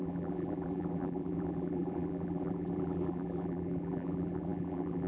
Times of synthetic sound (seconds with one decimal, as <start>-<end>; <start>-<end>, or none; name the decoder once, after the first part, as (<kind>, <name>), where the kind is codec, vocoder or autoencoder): 0.0-5.1 (vocoder, BigVGAN v2)